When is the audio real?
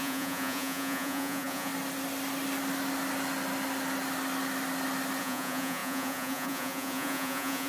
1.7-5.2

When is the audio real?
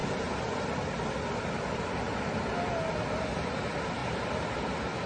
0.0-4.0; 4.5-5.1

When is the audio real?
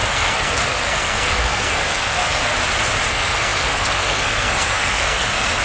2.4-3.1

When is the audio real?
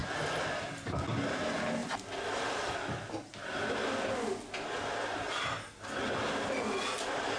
0.0-7.4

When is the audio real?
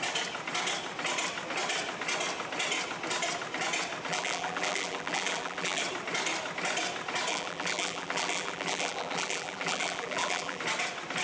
0.0-4.1; 5.8-7.3; 10.6-11.2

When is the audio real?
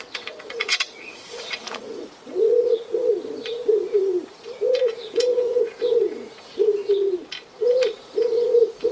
6.8-7.5